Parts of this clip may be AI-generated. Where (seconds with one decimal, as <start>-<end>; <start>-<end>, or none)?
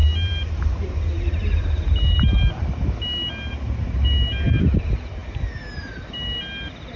none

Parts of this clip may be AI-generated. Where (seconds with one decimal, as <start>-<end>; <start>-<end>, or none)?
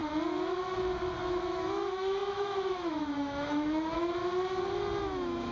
1.2-4.2; 5.0-5.5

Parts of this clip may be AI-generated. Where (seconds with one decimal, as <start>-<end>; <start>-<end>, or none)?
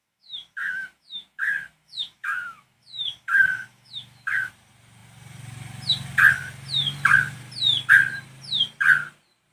0.0-4.5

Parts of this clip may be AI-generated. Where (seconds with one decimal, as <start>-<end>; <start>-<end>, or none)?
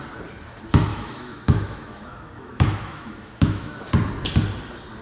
0.9-3.9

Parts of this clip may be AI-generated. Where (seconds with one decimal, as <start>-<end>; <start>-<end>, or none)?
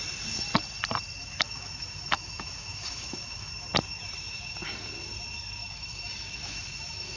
1.2-3.5; 5.6-7.2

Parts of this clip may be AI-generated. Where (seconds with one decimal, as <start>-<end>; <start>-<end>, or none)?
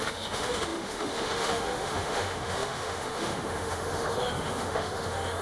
0.0-5.4